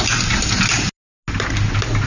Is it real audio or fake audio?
real